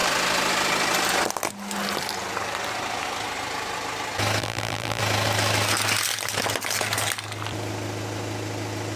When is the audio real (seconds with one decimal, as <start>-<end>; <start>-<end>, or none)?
0.0-4.4; 5.0-9.0